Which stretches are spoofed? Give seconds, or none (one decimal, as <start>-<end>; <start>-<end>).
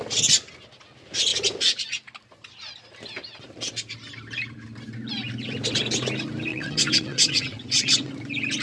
6.5-8.1